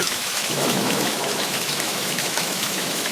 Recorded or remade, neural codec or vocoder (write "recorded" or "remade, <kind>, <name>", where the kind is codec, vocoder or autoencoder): remade, autoencoder, DAC-VAE